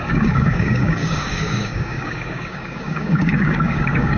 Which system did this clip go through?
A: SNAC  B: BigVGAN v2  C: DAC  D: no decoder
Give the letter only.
C